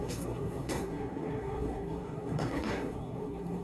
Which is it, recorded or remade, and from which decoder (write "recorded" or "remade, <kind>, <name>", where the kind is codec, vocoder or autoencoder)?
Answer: remade, codec, SNAC